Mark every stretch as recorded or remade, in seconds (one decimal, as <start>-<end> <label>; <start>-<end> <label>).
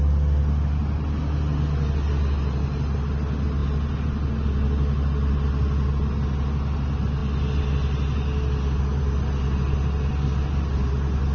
0.0-11.3 recorded